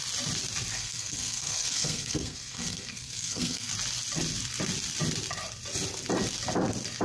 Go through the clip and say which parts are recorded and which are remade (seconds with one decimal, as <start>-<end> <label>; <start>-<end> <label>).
0.0-0.7 recorded; 0.7-3.7 remade; 3.7-7.0 recorded